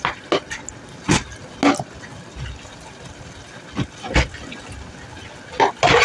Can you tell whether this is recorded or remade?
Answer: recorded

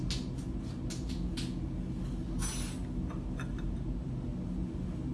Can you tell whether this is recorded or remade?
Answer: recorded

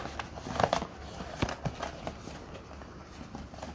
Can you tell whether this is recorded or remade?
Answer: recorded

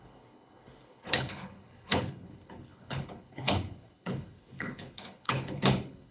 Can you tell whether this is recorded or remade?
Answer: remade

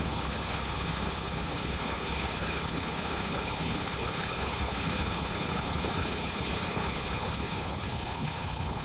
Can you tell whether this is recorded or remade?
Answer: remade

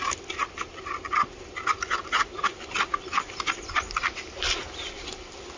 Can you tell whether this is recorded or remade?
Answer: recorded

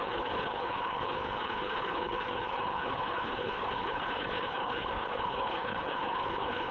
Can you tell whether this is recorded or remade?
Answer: remade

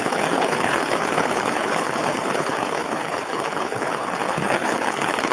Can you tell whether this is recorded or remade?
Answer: remade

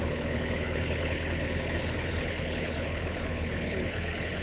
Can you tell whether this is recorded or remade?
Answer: remade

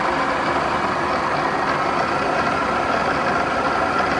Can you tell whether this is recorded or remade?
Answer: recorded